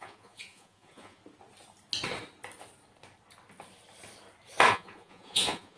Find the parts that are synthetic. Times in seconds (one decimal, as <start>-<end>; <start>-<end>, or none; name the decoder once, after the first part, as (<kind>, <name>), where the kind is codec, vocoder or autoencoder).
0.0-1.2 (vocoder, Vocos); 4.7-5.8